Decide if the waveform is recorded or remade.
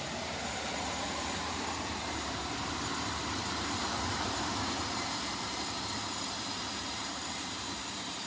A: remade